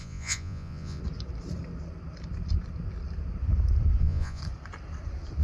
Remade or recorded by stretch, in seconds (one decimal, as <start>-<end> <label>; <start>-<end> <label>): 0.0-1.0 remade; 1.0-4.0 recorded; 4.0-4.4 remade; 4.4-5.4 recorded